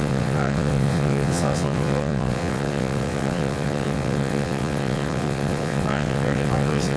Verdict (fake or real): fake